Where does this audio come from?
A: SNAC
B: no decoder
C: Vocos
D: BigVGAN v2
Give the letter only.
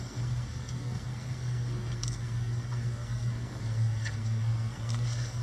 A